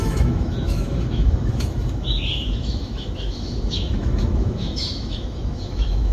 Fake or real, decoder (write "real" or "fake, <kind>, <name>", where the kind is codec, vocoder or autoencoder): fake, autoencoder, DAC-VAE